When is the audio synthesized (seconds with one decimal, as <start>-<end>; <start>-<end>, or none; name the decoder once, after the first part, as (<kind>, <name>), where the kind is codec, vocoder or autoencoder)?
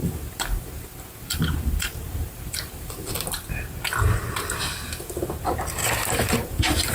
0.0-3.1 (vocoder, BigVGAN v2); 5.8-6.9